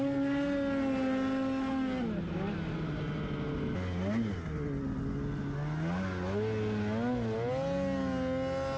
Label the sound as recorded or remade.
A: recorded